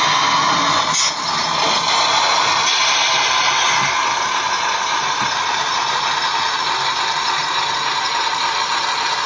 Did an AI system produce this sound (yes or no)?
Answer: no